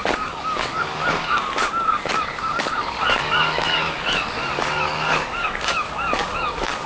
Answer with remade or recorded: remade